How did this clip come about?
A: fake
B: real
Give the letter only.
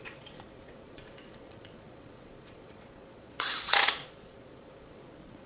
A